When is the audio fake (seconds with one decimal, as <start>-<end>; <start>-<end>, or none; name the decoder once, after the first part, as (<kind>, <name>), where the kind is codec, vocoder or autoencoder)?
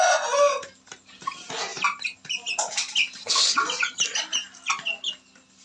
none